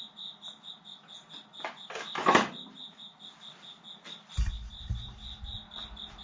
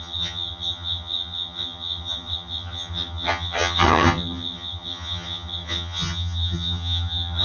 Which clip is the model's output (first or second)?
second